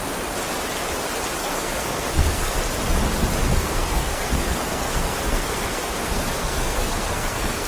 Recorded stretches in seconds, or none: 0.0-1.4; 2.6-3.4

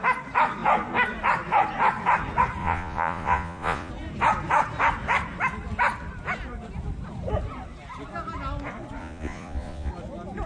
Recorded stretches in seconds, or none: 0.0-2.6; 3.9-9.0; 9.9-10.5

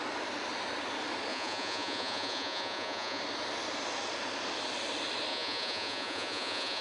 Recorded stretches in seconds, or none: 0.0-1.3; 3.2-5.3

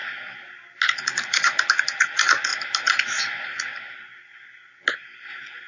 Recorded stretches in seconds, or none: 0.0-0.9; 2.5-3.2; 3.7-5.3

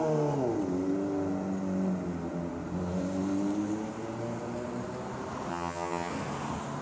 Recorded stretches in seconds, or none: 0.0-5.5; 6.1-6.8